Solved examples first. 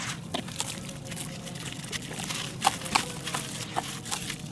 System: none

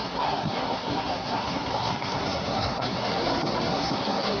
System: codec, SNAC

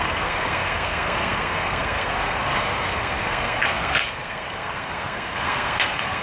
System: codec, SNAC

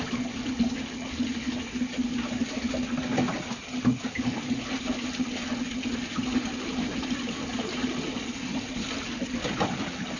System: none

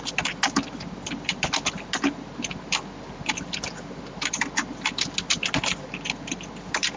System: none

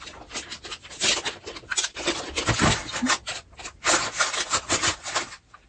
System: none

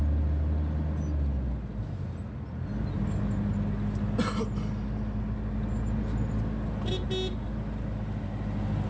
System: none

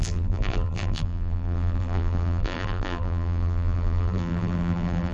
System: vocoder, BigVGAN v2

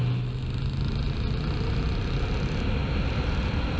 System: none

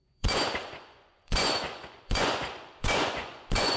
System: vocoder, Vocos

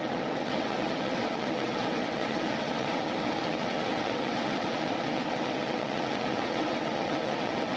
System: vocoder, WaveNeXt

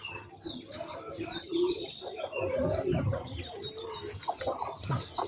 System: none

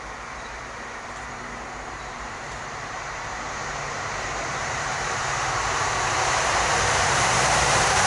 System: vocoder, BigVGAN v2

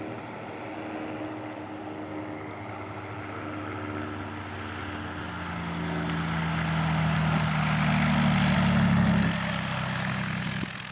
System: none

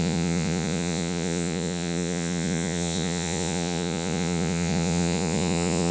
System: vocoder, Vocos